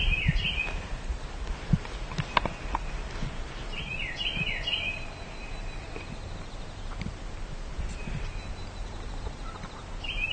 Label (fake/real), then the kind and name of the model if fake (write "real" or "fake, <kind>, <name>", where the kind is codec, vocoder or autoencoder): real